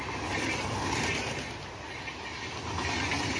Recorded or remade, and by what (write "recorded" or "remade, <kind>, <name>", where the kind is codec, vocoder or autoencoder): recorded